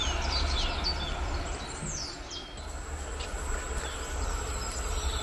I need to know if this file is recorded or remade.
recorded